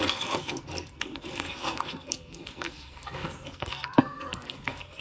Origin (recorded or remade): remade